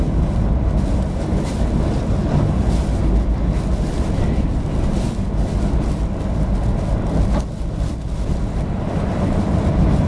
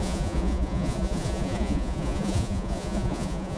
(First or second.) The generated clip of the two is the second